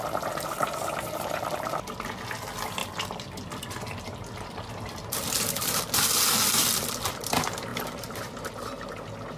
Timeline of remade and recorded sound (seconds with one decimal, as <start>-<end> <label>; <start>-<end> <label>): 0.0-2.8 recorded; 2.8-5.8 remade; 5.8-6.6 recorded; 6.6-7.3 remade; 7.3-7.7 recorded; 7.7-8.8 remade; 8.8-9.4 recorded